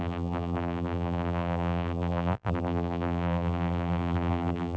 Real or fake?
fake